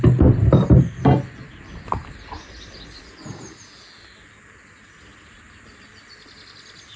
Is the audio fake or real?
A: real